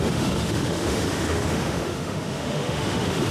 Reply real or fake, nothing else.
fake